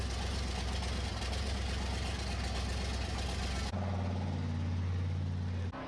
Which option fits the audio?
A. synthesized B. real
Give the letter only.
B